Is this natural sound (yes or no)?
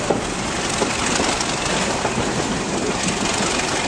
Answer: yes